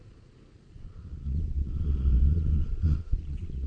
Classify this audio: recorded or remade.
remade